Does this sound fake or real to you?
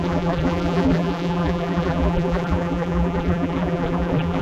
fake